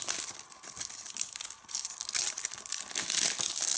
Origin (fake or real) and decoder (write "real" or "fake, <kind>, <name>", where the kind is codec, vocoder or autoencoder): real